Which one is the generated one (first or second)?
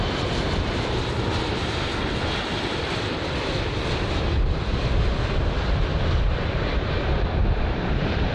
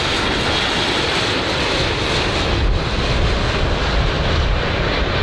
first